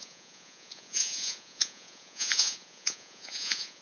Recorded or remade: remade